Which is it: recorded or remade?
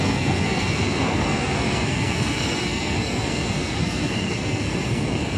remade